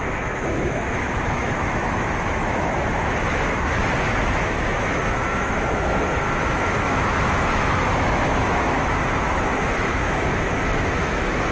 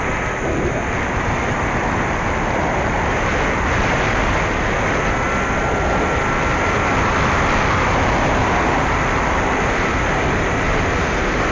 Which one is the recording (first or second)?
second